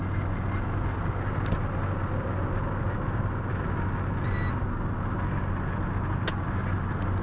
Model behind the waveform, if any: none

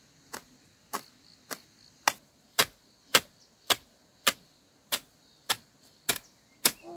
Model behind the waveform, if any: none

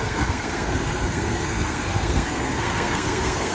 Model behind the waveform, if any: codec, SNAC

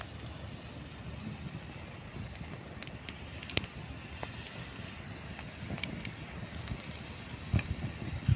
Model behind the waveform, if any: none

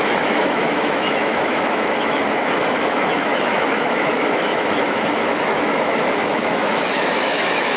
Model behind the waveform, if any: autoencoder, DAC-VAE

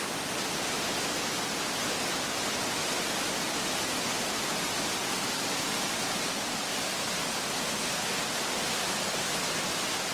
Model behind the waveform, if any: none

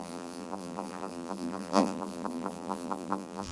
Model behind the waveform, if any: vocoder, BigVGAN v2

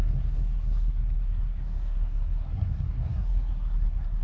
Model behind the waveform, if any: codec, SNAC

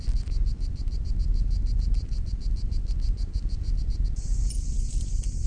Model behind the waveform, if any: none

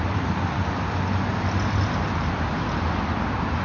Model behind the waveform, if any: none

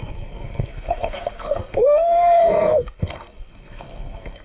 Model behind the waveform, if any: codec, SNAC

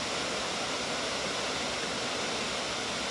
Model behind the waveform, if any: none